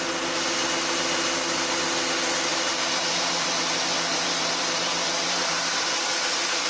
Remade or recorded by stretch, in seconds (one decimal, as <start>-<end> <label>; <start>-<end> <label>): 0.0-2.5 recorded; 2.5-6.7 remade